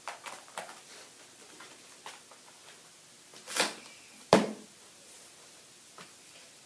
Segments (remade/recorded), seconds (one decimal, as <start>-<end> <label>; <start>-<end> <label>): 0.0-6.7 recorded